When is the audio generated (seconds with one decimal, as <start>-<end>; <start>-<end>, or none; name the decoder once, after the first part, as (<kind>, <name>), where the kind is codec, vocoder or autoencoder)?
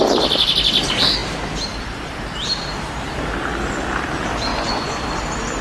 4.5-5.0 (vocoder, Vocos)